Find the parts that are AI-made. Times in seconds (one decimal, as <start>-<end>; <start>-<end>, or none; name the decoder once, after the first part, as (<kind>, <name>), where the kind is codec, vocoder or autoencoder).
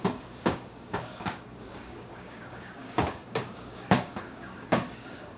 0.0-5.4 (codec, DAC)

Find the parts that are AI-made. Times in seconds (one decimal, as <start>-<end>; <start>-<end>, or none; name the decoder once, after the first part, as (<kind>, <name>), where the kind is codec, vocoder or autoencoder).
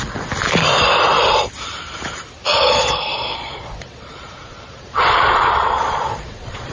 2.5-6.7 (vocoder, Vocos)